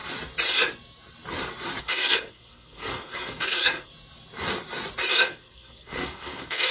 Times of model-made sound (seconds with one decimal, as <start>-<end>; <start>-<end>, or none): 1.8-3.9; 5.1-6.7